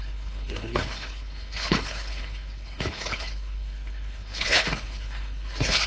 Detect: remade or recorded remade